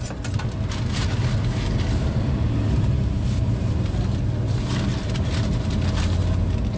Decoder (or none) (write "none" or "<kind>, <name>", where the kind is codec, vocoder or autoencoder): none